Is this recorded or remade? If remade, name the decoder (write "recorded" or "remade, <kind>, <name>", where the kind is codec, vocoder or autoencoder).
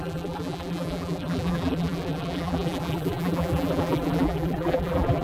remade, vocoder, BigVGAN v2